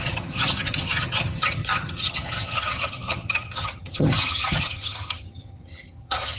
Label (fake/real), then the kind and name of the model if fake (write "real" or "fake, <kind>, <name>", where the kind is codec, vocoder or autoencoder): fake, vocoder, HiFi-GAN